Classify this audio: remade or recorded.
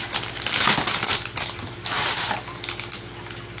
recorded